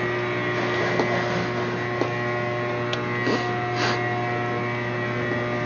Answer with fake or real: real